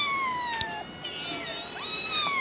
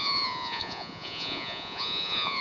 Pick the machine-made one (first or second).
second